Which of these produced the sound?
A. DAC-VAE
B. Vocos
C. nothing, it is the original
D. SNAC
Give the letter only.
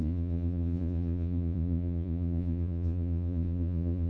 B